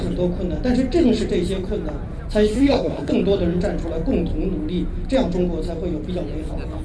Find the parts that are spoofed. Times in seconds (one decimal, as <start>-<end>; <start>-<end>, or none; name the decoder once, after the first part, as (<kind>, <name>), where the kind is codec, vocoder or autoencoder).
2.5-3.1 (codec, SNAC)